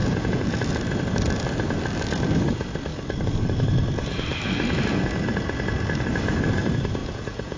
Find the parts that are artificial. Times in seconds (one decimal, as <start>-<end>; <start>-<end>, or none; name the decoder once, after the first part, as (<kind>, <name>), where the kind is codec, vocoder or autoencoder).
0.0-0.6 (vocoder, Vocos); 7.0-7.6